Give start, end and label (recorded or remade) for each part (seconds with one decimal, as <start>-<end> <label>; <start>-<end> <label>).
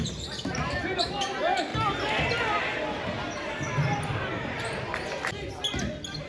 0.0-6.3 recorded